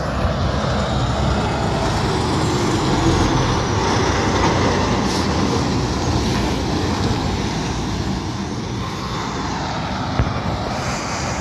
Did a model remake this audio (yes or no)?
no